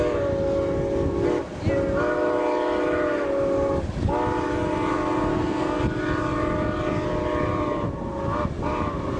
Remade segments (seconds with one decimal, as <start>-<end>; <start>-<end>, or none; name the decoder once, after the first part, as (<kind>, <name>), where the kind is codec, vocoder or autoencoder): 5.3-5.8 (codec, SNAC)